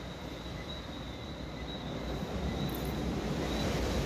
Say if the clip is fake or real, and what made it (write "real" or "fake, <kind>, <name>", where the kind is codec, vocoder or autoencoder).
real